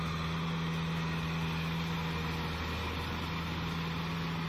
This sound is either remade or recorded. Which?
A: recorded